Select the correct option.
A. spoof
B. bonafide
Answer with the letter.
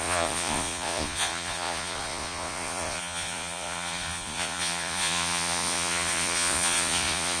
A